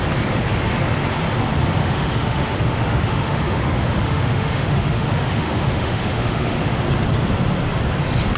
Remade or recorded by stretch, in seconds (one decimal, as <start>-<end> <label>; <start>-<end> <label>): 0.0-1.8 recorded; 1.8-6.8 remade; 6.8-8.4 recorded